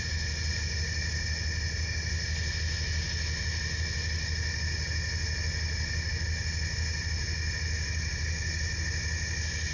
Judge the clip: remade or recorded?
recorded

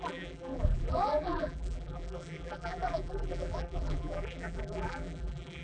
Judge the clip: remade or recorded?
remade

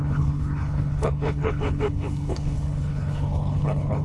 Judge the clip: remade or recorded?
remade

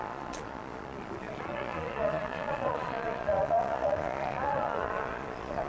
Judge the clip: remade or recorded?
remade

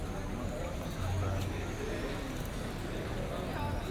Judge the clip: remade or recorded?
recorded